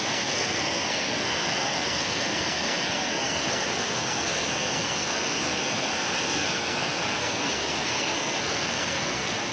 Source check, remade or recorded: remade